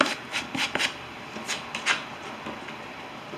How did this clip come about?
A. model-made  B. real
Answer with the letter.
B